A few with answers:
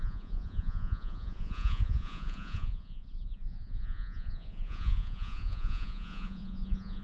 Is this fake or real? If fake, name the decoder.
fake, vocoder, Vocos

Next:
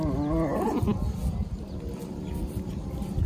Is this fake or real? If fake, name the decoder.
real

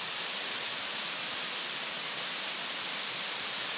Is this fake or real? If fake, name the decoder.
real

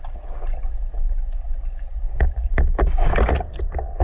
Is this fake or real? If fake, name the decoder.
real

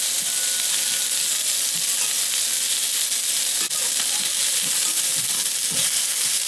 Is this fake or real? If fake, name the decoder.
real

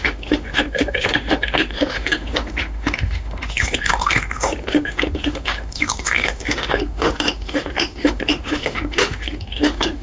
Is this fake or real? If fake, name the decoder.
fake, autoencoder, DAC-VAE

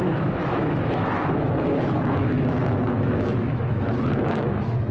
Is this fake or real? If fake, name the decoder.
fake, autoencoder, DAC-VAE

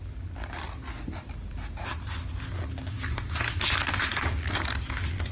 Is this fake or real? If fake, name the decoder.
real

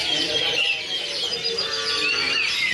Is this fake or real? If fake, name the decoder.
real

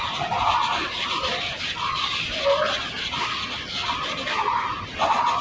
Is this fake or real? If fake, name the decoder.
real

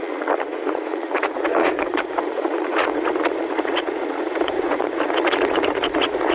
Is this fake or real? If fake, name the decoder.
fake, vocoder, Vocos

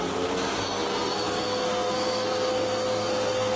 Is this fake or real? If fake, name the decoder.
fake, codec, SNAC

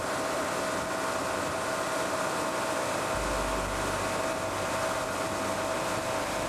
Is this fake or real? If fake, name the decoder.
real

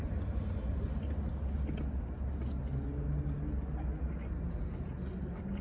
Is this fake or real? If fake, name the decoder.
real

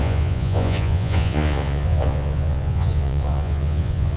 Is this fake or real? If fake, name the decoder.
fake, vocoder, Vocos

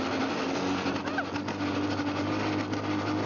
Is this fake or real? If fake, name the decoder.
real